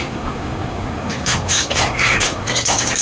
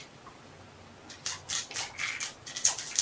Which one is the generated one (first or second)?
first